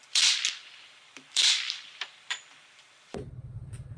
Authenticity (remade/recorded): remade